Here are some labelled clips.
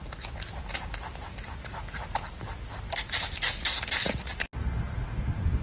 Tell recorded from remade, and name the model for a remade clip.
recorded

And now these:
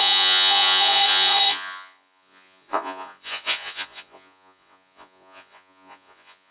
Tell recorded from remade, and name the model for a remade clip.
remade, vocoder, Vocos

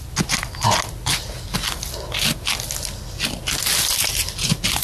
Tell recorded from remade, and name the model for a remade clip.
recorded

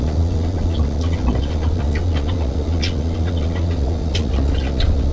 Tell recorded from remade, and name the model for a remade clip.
remade, vocoder, Vocos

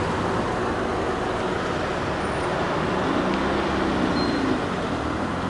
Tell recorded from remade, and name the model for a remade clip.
recorded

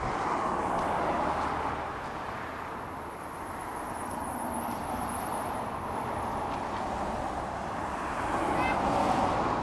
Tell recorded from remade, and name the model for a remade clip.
recorded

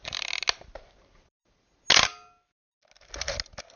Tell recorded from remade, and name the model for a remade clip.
recorded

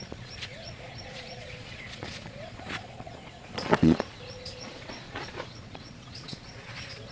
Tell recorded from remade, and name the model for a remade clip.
remade, vocoder, Vocos